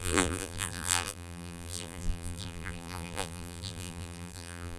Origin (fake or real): fake